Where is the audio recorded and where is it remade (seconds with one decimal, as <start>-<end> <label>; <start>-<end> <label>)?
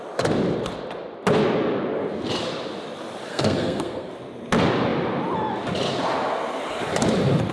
0.0-3.3 recorded; 3.3-4.1 remade; 4.1-7.5 recorded